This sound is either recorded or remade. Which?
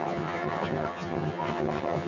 remade